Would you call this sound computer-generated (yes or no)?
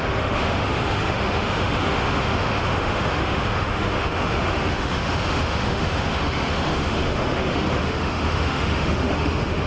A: yes